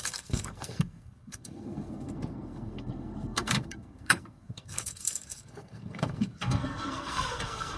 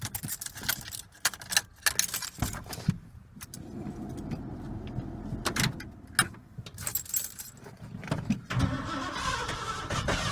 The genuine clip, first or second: second